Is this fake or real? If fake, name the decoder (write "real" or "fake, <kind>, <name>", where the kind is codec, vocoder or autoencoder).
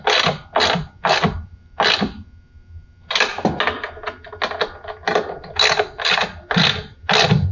real